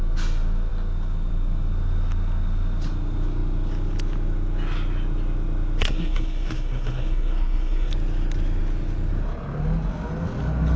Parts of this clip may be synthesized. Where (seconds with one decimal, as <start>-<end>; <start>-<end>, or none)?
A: 5.8-7.9